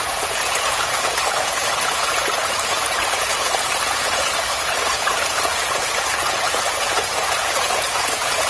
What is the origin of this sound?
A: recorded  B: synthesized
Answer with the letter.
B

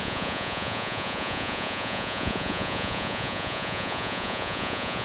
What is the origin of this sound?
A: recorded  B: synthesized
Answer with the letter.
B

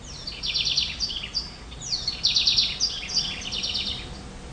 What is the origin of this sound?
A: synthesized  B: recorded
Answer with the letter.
B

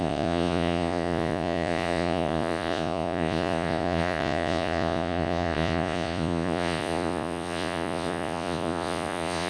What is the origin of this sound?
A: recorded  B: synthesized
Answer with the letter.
B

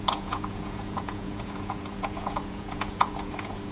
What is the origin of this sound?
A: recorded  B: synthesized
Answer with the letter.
B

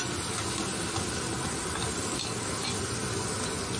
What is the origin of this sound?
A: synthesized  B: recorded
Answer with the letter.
B